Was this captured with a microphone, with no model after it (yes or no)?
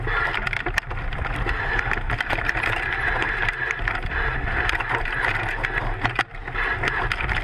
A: yes